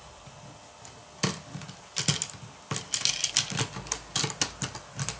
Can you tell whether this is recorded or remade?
recorded